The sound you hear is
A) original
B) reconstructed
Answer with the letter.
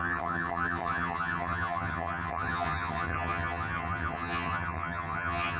B